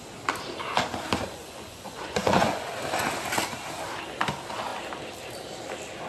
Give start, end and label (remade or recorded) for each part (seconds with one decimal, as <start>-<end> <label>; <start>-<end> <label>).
0.0-1.3 recorded; 1.3-2.7 remade; 2.7-6.1 recorded

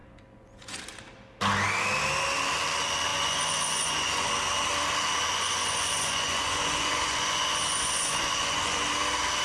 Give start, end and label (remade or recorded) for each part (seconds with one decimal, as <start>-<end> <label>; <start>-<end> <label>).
0.0-0.8 remade; 0.8-3.1 recorded; 3.1-4.3 remade; 4.3-5.3 recorded; 5.3-8.8 remade; 8.8-9.4 recorded

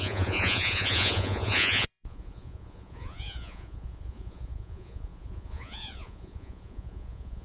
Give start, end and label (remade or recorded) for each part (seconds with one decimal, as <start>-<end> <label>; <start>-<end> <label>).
0.0-7.4 remade

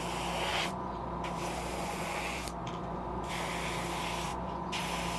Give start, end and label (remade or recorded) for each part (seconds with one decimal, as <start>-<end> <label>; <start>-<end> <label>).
0.0-0.5 recorded; 0.5-1.1 remade; 1.1-1.7 recorded; 1.7-2.4 remade; 2.4-2.8 recorded; 2.8-3.3 remade; 3.3-4.3 recorded; 4.3-4.8 remade; 4.8-5.2 recorded